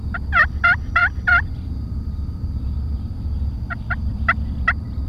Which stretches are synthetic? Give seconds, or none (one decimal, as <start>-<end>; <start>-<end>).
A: 0.0-5.1